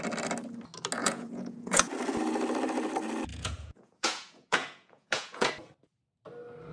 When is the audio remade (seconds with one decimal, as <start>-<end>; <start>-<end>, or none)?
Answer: 1.0-1.9; 3.3-5.5